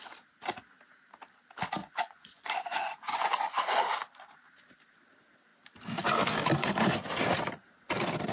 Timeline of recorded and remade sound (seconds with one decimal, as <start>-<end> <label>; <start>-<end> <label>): 0.0-1.8 recorded; 1.8-3.8 remade; 3.8-8.3 recorded